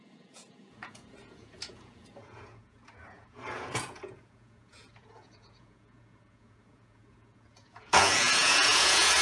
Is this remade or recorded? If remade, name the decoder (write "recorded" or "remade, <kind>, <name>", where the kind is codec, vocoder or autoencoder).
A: remade, vocoder, Vocos